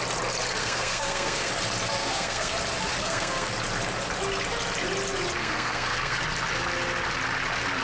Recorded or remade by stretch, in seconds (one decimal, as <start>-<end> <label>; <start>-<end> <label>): 0.0-0.6 recorded; 0.6-1.5 remade; 1.5-2.0 recorded; 2.0-2.5 remade; 2.5-3.0 recorded; 3.0-3.5 remade; 3.5-5.4 recorded; 5.4-6.2 remade; 6.2-7.8 recorded